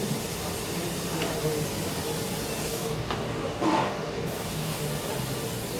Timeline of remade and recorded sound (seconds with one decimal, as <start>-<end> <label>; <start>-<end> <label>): 0.0-2.6 recorded; 2.6-4.8 remade; 4.8-5.8 recorded